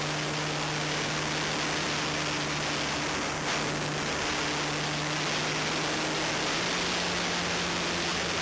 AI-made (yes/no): no